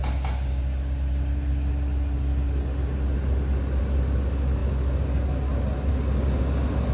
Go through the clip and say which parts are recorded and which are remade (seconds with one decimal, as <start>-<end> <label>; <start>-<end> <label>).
0.0-6.9 recorded